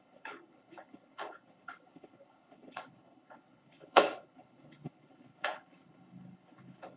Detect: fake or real fake